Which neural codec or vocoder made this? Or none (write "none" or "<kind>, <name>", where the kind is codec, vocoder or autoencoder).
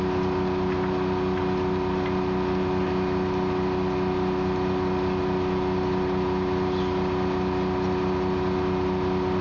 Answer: none